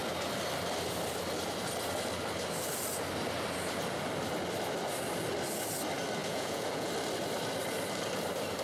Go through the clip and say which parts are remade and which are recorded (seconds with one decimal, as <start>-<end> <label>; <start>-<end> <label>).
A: 0.0-6.2 recorded; 6.2-6.9 remade; 6.9-8.6 recorded

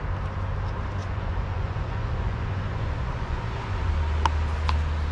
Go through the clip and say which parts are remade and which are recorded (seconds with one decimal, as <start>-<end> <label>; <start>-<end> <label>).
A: 0.0-1.0 recorded; 1.0-3.9 remade; 3.9-5.1 recorded